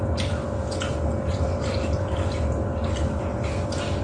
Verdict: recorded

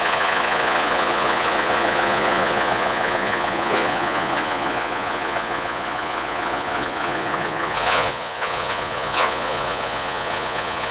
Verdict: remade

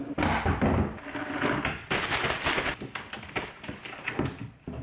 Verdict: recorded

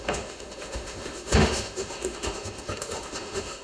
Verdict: remade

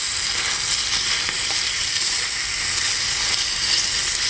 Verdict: recorded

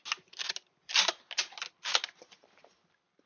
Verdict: recorded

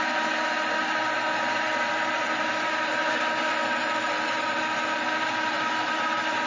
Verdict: recorded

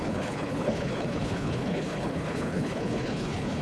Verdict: remade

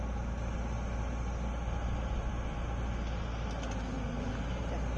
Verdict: recorded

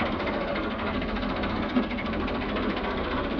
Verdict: remade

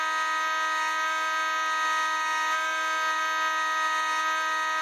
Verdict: recorded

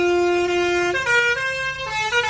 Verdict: recorded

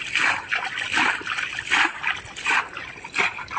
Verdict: recorded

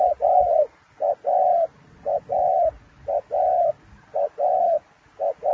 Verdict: recorded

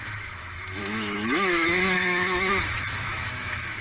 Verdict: remade